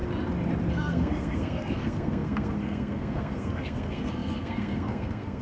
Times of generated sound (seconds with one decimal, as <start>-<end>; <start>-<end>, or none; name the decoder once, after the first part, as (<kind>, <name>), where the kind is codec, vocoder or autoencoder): 0.7-5.4 (codec, SNAC)